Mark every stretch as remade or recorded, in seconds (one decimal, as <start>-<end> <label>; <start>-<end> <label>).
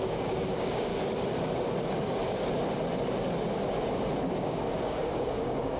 0.0-0.9 remade; 0.9-4.4 recorded; 4.4-5.8 remade